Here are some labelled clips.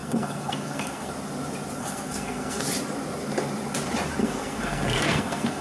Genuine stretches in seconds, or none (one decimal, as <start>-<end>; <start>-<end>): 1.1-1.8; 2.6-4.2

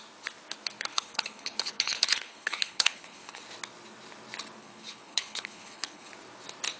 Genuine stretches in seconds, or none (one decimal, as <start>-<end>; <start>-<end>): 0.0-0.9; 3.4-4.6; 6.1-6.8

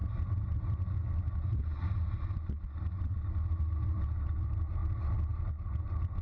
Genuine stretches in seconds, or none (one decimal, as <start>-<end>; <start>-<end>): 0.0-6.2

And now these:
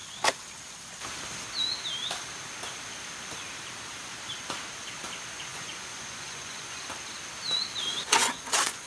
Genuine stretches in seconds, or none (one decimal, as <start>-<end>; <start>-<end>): 0.0-5.5; 6.8-7.9